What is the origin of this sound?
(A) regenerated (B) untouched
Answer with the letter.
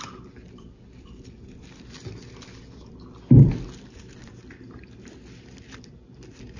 B